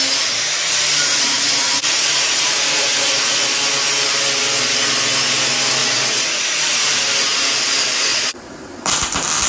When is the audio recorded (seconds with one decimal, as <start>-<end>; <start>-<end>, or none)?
0.0-1.1; 3.5-5.8; 7.0-8.1; 8.7-9.5